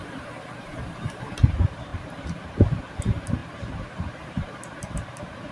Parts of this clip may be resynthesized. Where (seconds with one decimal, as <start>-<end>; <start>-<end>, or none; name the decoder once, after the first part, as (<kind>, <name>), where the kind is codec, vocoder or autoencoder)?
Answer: 0.0-5.5 (vocoder, BigVGAN v2)